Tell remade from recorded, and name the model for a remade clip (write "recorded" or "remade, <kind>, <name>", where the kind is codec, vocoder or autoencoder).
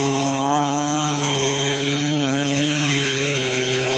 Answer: remade, codec, HILCodec